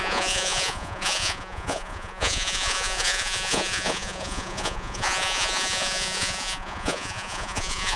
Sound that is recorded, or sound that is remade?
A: remade